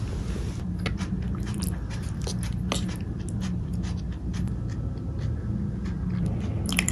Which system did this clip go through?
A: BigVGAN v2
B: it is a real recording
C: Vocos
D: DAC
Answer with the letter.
B